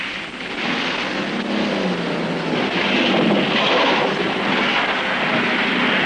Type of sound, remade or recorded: recorded